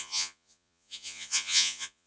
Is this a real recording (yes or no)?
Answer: no